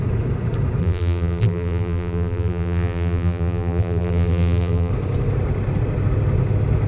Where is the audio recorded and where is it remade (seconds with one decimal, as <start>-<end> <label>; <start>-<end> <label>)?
0.0-0.8 recorded; 0.8-4.9 remade; 4.9-6.9 recorded